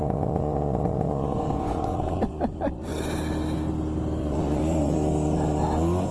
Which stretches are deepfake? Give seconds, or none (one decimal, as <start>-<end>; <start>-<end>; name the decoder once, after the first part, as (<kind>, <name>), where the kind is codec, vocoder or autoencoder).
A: 0.0-2.9 (vocoder, Vocos); 4.2-5.0

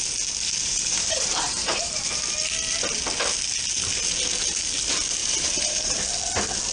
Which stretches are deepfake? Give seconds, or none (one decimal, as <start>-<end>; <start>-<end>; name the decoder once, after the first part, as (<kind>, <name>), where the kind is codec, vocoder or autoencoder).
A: 0.6-2.2 (vocoder, BigVGAN v2); 5.2-6.0